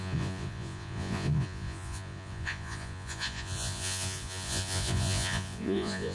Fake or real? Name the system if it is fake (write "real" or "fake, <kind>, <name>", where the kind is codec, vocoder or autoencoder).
fake, vocoder, Vocos